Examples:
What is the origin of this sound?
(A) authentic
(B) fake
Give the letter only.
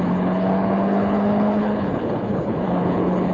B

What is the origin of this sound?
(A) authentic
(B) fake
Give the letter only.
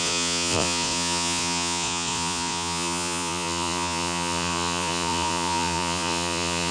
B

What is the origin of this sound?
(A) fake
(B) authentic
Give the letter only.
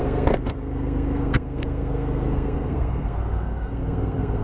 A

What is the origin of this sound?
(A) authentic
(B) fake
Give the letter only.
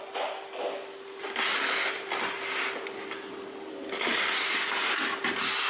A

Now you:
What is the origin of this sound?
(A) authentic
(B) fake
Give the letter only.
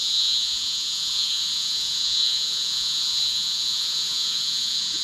B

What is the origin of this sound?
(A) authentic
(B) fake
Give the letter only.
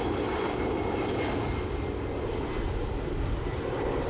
A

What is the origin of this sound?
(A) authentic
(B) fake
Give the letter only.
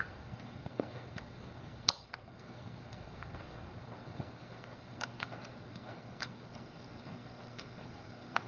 B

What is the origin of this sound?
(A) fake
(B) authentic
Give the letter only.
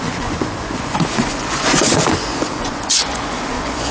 A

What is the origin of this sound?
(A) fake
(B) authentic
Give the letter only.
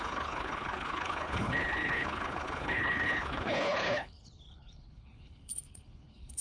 A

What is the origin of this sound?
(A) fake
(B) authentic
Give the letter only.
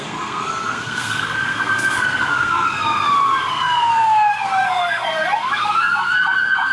A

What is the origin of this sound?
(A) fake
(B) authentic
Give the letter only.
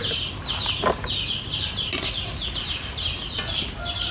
B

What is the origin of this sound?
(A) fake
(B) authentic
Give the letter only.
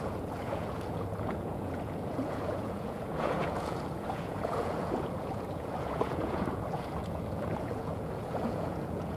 A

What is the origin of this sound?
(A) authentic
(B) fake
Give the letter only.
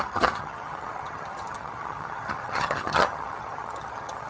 B